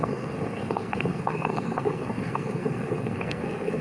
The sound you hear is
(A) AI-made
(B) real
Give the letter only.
A